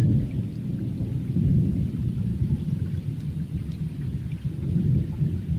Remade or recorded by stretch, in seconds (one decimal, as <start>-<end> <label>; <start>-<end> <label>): 0.0-2.3 recorded; 2.3-5.6 remade